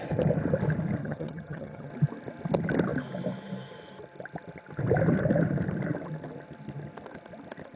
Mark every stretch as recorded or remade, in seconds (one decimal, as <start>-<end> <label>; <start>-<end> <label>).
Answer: 0.0-1.0 recorded; 1.0-1.9 remade; 1.9-7.8 recorded